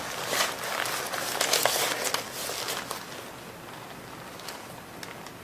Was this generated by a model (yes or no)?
no